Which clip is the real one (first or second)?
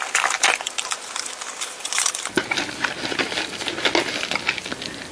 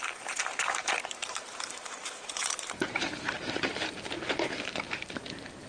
first